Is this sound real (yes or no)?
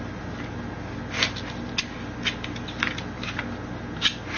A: yes